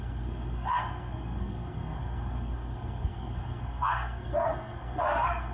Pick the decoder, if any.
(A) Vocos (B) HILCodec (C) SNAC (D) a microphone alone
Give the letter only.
C